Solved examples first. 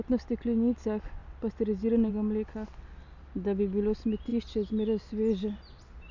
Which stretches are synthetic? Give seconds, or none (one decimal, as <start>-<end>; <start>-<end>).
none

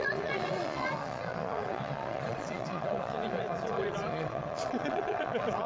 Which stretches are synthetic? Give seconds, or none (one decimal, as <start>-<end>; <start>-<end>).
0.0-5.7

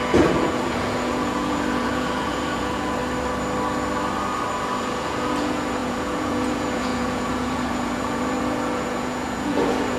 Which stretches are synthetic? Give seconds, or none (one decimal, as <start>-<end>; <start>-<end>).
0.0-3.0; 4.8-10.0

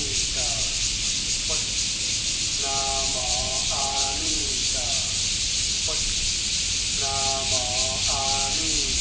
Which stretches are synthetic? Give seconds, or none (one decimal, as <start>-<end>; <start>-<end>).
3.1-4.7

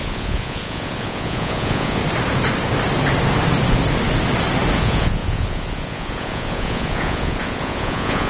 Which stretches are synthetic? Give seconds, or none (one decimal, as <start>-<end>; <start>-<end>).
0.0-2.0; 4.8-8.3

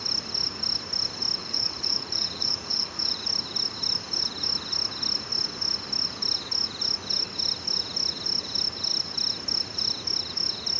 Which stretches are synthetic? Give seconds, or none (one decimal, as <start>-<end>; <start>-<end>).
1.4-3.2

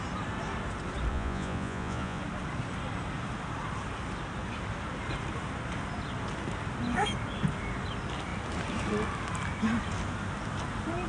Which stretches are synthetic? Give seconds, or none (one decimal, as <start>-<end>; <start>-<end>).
1.1-2.2

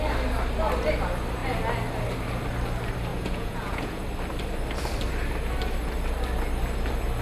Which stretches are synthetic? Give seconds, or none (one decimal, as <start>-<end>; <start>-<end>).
3.1-4.0